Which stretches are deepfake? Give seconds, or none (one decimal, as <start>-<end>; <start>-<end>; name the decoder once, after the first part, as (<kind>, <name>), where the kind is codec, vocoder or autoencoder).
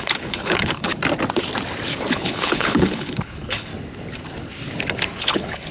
0.0-0.9 (codec, HILCodec); 2.1-3.7; 5.2-5.7